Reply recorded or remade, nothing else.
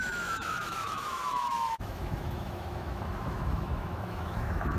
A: remade